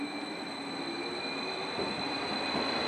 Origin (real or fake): real